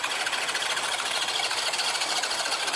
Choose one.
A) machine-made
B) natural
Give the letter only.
B